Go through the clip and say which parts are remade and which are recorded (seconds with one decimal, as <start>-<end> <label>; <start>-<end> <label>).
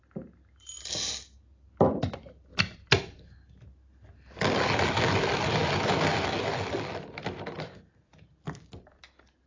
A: 0.0-9.5 recorded